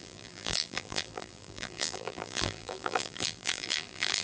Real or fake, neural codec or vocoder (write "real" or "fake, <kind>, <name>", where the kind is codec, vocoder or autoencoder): fake, vocoder, BigVGAN v2